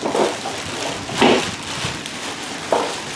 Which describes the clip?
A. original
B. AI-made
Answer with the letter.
A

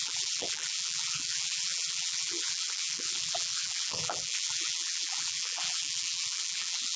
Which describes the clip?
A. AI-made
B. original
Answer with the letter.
A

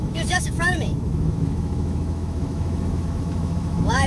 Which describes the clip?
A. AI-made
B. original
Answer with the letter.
A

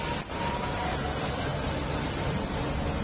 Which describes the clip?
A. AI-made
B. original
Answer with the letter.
B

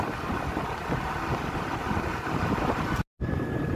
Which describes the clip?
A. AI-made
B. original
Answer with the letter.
B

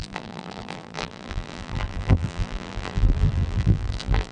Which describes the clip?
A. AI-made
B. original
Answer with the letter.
A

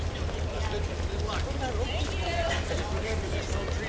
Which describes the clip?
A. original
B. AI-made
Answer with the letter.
A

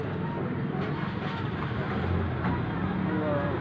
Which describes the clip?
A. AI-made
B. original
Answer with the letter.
B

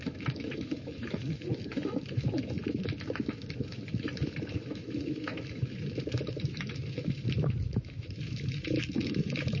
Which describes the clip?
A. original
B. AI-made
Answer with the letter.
B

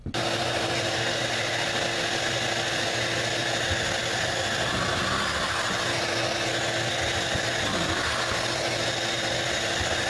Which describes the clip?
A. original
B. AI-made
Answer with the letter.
A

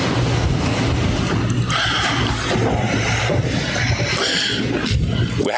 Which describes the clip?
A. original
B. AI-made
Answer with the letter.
A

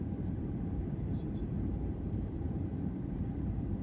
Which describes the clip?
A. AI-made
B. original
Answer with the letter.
A